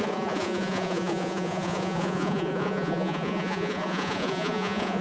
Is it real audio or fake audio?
fake